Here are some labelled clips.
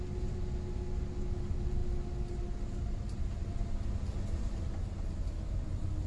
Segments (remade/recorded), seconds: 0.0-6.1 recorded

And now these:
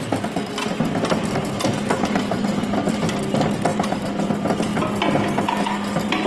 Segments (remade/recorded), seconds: 0.0-3.7 recorded; 3.7-4.2 remade; 4.2-6.3 recorded

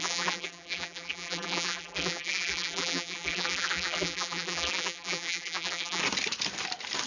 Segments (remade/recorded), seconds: 0.0-6.0 remade; 6.0-7.1 recorded

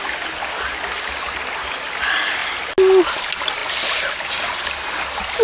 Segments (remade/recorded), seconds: 0.0-5.4 recorded

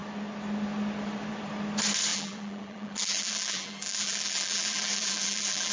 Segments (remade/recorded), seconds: 0.0-2.1 recorded; 2.1-5.7 remade

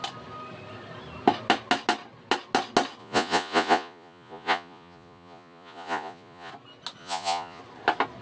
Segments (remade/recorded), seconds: 0.0-3.0 recorded; 3.0-6.5 remade; 6.5-7.0 recorded; 7.0-7.6 remade; 7.6-8.2 recorded

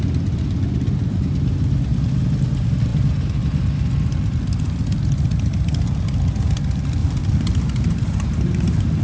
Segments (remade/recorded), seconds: 0.0-7.0 recorded; 7.0-9.0 remade